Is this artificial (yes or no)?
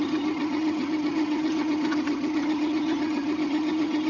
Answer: yes